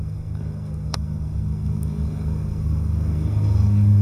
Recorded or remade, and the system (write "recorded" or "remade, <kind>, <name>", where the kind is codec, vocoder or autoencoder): remade, codec, SNAC